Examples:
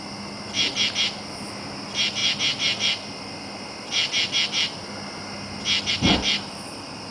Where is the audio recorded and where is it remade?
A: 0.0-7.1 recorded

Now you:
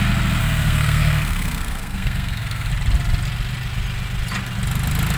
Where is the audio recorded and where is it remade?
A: 0.0-0.4 recorded; 0.4-2.7 remade; 2.7-5.2 recorded

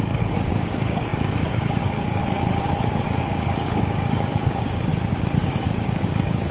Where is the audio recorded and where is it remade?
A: 0.0-2.2 remade; 2.2-3.2 recorded; 3.2-4.9 remade; 4.9-5.4 recorded; 5.4-6.5 remade

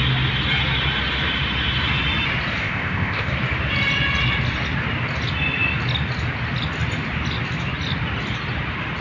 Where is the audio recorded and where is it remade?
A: 0.0-2.6 recorded; 2.6-3.3 remade; 3.3-9.0 recorded

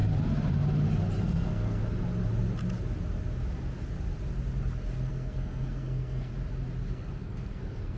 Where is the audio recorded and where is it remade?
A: 0.0-1.2 recorded; 1.2-1.8 remade; 1.8-5.1 recorded; 5.1-6.3 remade; 6.3-6.9 recorded; 6.9-8.0 remade